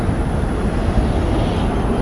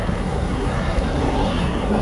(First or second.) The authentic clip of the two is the first